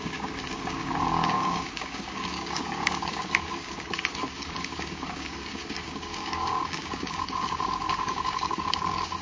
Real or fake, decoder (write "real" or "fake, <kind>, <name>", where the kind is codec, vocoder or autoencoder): fake, codec, DAC